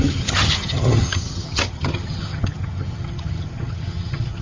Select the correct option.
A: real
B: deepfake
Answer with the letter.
B